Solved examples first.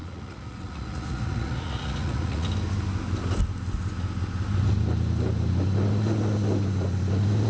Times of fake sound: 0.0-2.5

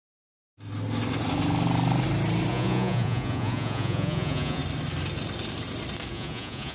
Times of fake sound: 2.5-4.6; 6.1-6.7

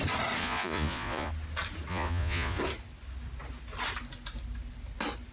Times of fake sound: 0.4-1.3; 1.9-2.6

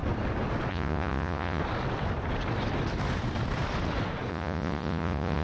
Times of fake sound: 0.7-1.6; 4.3-5.4

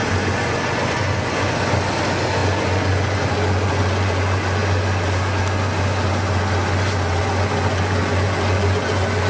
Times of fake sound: 0.0-4.6; 7.2-9.3

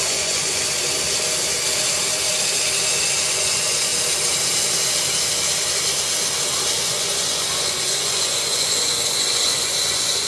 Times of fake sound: 0.0-0.7; 3.3-3.9; 6.7-10.3

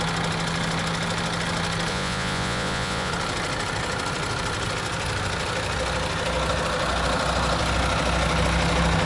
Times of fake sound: 1.9-3.1

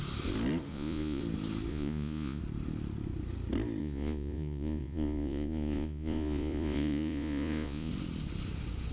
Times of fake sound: 0.7-1.2; 1.7-2.4; 3.8-7.9